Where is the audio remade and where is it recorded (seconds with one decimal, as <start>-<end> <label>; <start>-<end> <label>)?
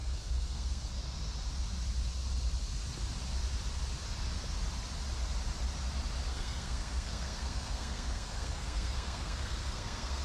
0.0-0.9 remade; 0.9-6.3 recorded; 6.3-10.2 remade